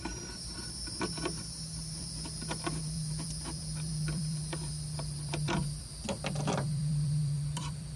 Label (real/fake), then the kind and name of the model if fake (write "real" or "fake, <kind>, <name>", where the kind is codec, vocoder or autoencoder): fake, vocoder, BigVGAN v2